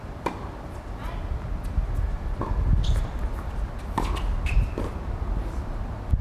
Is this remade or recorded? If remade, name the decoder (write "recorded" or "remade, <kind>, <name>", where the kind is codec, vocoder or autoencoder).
recorded